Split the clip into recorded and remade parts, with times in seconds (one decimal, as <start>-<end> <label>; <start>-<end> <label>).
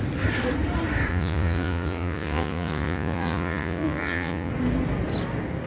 0.0-1.1 recorded; 1.1-4.5 remade; 4.5-5.7 recorded